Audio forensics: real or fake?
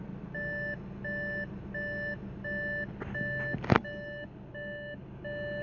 real